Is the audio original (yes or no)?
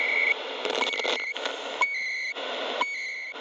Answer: yes